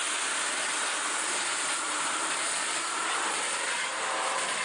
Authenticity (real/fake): real